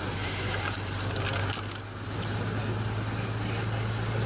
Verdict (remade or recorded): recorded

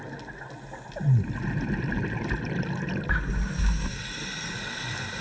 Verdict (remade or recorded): recorded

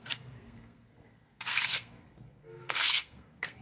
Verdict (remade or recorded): remade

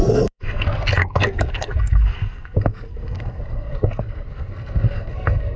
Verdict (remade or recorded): remade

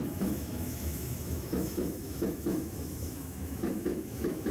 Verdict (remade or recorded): remade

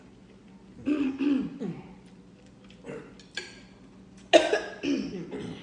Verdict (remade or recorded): recorded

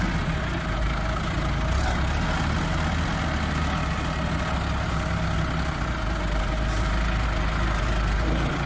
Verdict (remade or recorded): recorded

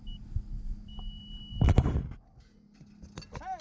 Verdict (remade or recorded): recorded